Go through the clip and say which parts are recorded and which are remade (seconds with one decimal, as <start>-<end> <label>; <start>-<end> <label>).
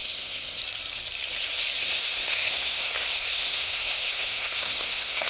0.0-0.6 remade; 0.6-1.8 recorded; 1.8-5.3 remade